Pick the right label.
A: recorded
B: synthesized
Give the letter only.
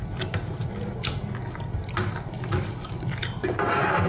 A